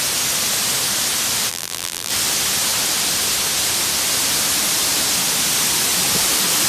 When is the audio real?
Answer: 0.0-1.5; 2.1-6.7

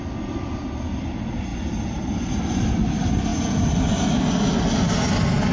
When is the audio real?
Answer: 0.0-5.5

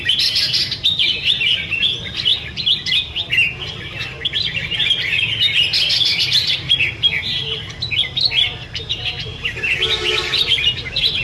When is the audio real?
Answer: 2.3-6.2